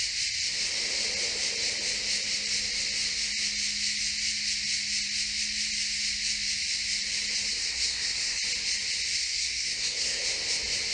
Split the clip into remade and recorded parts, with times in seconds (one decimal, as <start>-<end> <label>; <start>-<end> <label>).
0.0-7.5 recorded; 7.5-8.4 remade; 8.4-9.2 recorded; 9.2-10.2 remade; 10.2-10.9 recorded